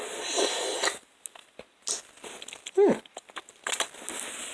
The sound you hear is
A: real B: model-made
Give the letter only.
A